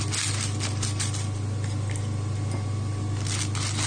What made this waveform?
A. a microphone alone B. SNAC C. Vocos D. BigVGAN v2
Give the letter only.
A